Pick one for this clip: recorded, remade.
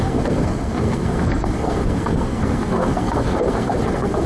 remade